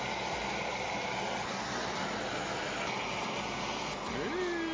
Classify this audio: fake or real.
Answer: real